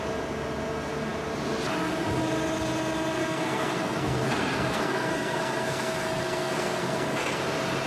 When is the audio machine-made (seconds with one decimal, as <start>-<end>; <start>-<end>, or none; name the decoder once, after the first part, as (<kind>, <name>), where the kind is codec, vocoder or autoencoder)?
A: 3.2-7.4 (codec, SNAC)